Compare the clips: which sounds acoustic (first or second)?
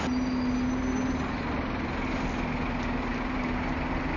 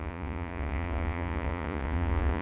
first